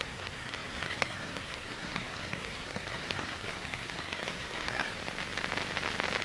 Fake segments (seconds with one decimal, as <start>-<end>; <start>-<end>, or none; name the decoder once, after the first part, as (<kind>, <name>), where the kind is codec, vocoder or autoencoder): 0.0-5.0 (codec, SNAC)